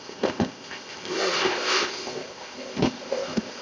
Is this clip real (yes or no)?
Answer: no